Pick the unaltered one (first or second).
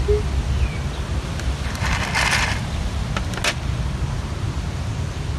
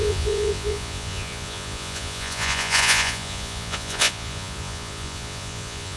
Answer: first